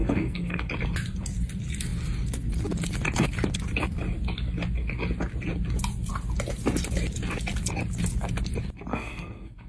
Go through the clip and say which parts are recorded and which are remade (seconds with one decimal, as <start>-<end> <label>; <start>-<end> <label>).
0.0-0.7 remade; 0.7-8.9 recorded; 8.9-9.7 remade